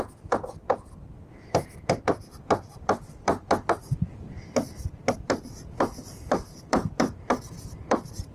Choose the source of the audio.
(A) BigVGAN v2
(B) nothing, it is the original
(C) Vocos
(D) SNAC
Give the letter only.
A